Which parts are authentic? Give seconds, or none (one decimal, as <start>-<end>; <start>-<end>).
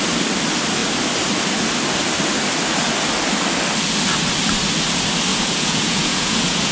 0.0-5.3